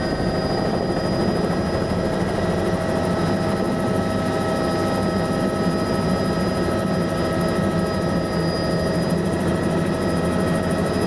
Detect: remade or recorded recorded